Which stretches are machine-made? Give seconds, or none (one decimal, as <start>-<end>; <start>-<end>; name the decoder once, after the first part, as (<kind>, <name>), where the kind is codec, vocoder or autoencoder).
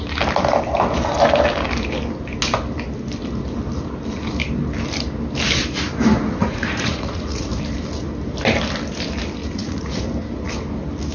6.4-7.5 (vocoder, Vocos); 9.4-10.0